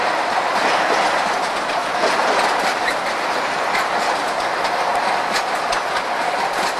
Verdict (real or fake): real